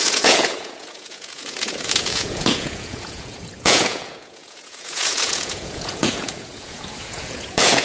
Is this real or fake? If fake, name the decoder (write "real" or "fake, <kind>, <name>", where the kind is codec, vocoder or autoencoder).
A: fake, vocoder, Vocos